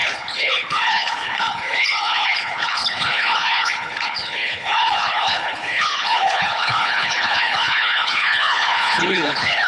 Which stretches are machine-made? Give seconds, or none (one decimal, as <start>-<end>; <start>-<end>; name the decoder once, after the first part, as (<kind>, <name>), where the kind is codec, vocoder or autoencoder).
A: 0.0-9.7 (codec, HILCodec)